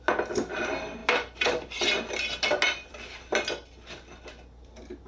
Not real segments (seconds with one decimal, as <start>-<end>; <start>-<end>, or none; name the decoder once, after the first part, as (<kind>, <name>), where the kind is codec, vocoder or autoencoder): none